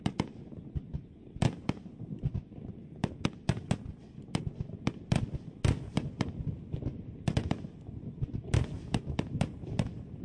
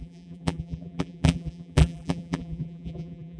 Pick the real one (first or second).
first